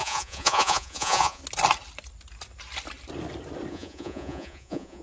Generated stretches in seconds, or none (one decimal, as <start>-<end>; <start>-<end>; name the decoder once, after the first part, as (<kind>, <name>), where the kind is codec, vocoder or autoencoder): 0.0-1.4 (vocoder, Vocos); 3.7-5.0